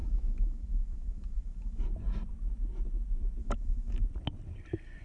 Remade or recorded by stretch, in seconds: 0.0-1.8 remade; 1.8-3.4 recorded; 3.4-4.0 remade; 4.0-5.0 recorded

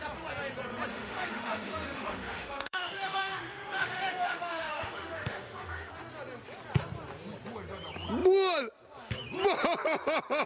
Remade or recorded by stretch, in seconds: 0.0-0.9 recorded; 0.9-5.9 remade; 5.9-10.5 recorded

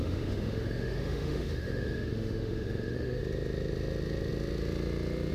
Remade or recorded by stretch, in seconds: 0.0-3.2 remade; 3.2-5.3 recorded

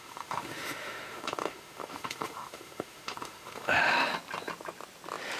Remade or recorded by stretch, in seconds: 0.0-4.1 remade; 4.1-5.4 recorded

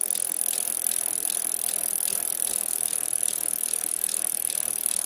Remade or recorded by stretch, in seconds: 0.0-2.5 recorded; 2.5-5.1 remade

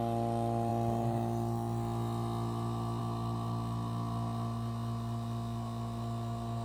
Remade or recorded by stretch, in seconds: 0.0-6.6 recorded